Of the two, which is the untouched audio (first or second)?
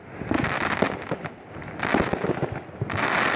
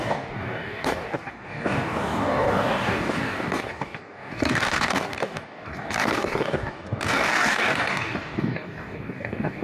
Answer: first